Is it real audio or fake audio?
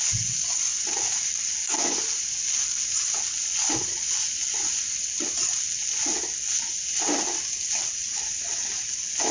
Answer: real